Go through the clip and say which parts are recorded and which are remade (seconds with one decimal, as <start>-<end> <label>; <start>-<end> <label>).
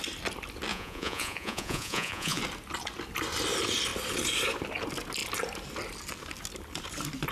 0.0-0.7 recorded; 0.7-2.4 remade; 2.4-7.3 recorded